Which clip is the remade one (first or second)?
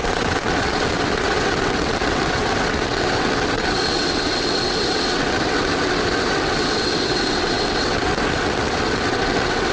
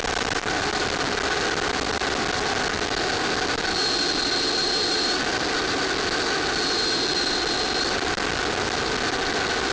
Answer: first